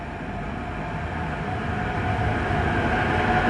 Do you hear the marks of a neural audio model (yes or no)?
no